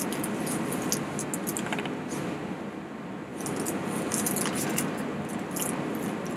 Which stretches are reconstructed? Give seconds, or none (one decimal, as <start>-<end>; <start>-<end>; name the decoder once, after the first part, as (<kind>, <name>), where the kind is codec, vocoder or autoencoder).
none